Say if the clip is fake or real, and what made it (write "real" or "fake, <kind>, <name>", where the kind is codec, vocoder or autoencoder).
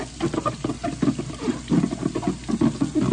real